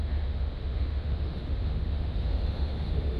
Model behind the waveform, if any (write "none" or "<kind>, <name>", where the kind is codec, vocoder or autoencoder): autoencoder, DAC-VAE